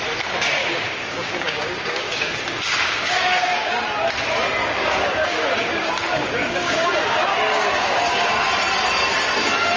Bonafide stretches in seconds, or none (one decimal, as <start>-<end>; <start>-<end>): 0.0-0.6; 3.8-4.6; 8.5-9.8